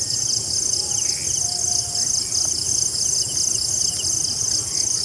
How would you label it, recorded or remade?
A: recorded